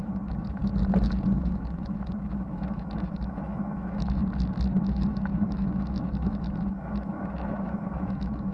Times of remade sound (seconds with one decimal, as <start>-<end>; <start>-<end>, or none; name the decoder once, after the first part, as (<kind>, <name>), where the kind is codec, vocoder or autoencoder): 0.0-0.6 (autoencoder, DAC-VAE); 1.2-4.2; 4.8-8.5